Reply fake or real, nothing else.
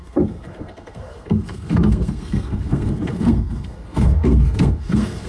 fake